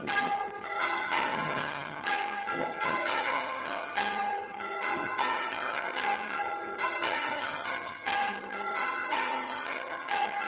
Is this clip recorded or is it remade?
remade